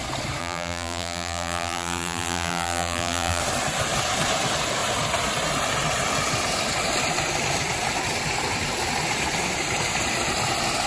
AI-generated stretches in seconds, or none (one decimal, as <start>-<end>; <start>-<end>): 0.4-3.4